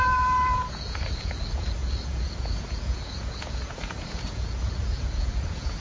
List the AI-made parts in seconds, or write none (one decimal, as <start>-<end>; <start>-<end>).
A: 0.0-5.8